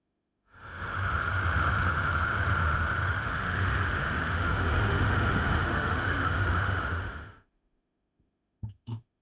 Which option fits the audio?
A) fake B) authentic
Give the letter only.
A